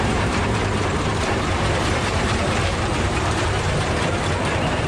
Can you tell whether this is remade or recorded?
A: remade